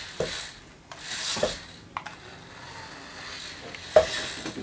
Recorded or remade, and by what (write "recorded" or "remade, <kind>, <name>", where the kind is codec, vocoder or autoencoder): recorded